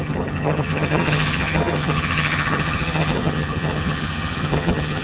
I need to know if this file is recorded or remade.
remade